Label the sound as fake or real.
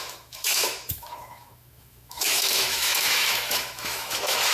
fake